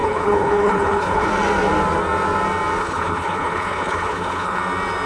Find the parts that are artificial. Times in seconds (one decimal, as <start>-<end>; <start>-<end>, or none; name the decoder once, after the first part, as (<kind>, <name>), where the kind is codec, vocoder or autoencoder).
0.0-1.3 (codec, HILCodec); 2.8-4.6